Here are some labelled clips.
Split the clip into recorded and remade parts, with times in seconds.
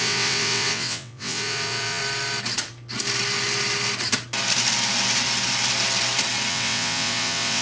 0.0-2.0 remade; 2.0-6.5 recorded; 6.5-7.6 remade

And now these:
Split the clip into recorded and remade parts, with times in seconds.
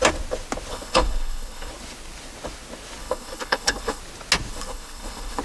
0.0-0.7 recorded; 0.7-1.7 remade; 1.7-3.0 recorded; 3.0-4.0 remade; 4.0-4.5 recorded; 4.5-5.4 remade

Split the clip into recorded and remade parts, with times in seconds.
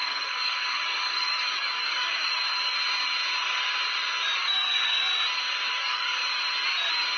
0.0-2.4 remade; 2.4-4.4 recorded; 4.4-5.1 remade; 5.1-5.7 recorded; 5.7-6.2 remade; 6.2-7.2 recorded